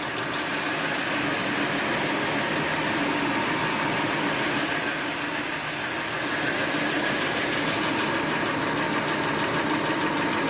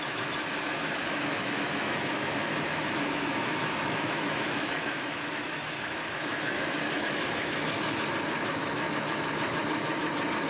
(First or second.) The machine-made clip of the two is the second